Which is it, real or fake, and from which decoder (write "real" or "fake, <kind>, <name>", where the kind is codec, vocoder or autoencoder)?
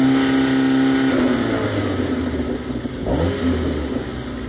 real